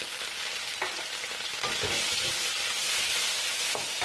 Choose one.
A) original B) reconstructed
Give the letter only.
A